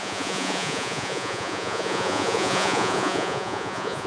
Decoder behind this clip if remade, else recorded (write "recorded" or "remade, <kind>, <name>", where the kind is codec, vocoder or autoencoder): remade, vocoder, Vocos